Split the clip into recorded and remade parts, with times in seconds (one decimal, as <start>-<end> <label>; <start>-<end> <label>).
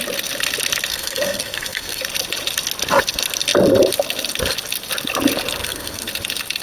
0.0-0.9 recorded; 0.9-2.0 remade; 2.0-5.6 recorded; 5.6-6.1 remade; 6.1-6.6 recorded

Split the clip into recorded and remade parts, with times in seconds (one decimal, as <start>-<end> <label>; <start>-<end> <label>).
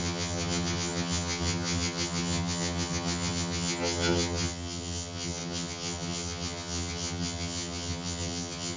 0.0-8.8 remade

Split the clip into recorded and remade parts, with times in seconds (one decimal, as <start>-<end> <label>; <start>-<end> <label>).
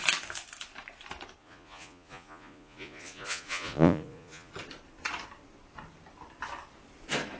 0.0-1.4 recorded; 1.4-4.5 remade; 4.5-7.4 recorded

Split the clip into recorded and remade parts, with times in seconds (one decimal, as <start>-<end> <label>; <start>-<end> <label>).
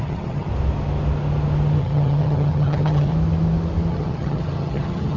0.0-0.5 remade; 0.5-1.8 recorded; 1.8-3.1 remade; 3.1-3.9 recorded; 3.9-5.2 remade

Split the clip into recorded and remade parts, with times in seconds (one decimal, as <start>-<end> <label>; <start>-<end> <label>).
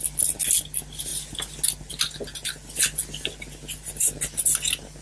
0.0-5.0 recorded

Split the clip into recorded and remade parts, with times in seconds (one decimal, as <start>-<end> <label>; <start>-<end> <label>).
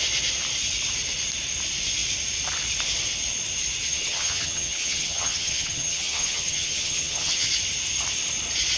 0.0-3.9 recorded; 3.9-7.5 remade; 7.5-8.8 recorded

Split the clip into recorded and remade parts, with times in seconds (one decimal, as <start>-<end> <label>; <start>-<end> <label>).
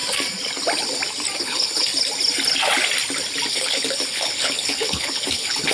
0.0-1.4 recorded; 1.4-1.9 remade; 1.9-3.5 recorded; 3.5-5.7 remade